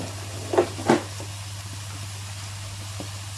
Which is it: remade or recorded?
recorded